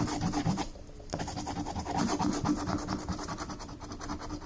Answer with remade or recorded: recorded